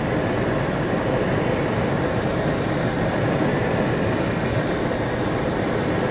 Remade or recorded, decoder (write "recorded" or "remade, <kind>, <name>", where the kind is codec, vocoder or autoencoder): recorded